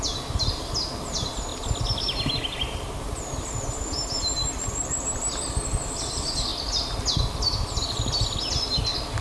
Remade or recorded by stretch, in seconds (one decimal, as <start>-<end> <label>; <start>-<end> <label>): 0.0-9.2 recorded